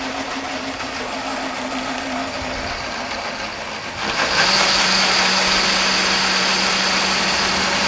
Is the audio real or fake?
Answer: real